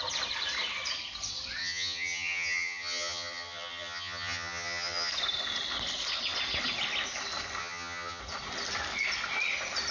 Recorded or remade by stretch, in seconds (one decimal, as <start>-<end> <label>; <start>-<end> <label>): 0.0-1.6 recorded; 1.6-5.1 remade; 5.1-7.6 recorded; 7.6-8.2 remade; 8.2-9.9 recorded